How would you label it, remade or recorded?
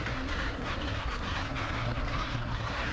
remade